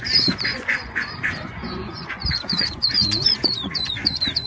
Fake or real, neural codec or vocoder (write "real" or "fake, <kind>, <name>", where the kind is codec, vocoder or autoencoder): fake, vocoder, Vocos